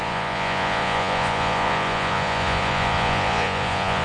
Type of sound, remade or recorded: remade